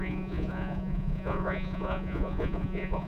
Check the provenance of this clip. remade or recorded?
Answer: remade